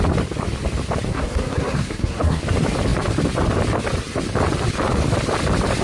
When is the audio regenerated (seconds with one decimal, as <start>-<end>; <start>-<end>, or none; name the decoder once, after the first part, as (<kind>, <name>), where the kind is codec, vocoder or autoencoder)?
1.1-2.4 (codec, SNAC)